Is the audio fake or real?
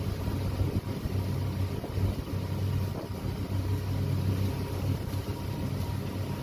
real